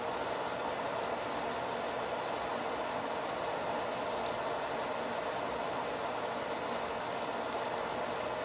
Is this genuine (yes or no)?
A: yes